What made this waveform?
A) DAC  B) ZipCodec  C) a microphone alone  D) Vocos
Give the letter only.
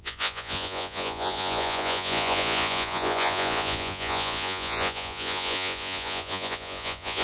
D